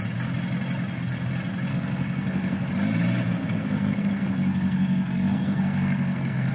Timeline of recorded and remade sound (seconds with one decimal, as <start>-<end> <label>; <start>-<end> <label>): 0.0-1.7 recorded; 1.7-2.7 remade; 2.7-3.4 recorded; 3.4-6.5 remade